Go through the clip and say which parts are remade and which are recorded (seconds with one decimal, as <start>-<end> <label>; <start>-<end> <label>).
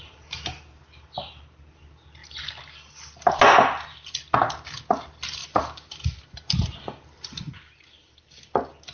0.0-8.9 recorded